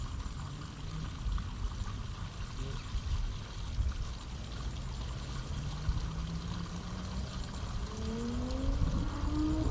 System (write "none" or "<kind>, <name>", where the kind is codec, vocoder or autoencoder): none